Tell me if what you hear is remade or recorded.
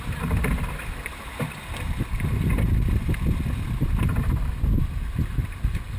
recorded